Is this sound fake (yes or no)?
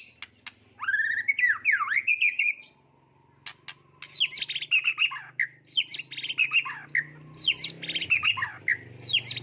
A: no